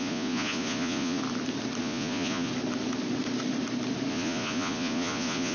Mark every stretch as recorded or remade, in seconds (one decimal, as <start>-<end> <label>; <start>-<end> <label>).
0.0-1.2 remade; 1.2-1.8 recorded; 1.8-2.5 remade; 2.5-4.1 recorded; 4.1-5.5 remade